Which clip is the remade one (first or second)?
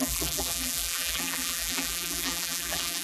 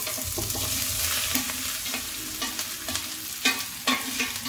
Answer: first